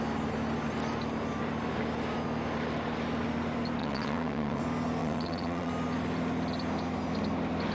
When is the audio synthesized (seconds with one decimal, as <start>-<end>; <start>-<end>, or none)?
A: 3.8-4.6; 5.0-5.7

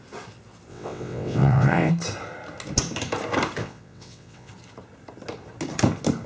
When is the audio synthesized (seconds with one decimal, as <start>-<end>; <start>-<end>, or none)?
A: 0.7-1.9; 3.6-4.5

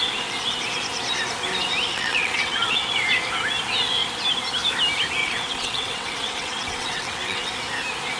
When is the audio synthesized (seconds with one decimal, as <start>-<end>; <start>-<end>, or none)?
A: 1.9-2.9; 5.2-7.5

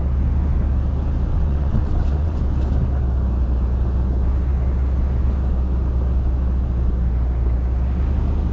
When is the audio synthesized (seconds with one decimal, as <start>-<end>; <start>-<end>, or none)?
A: 1.3-2.4